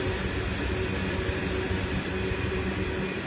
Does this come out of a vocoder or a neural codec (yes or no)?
no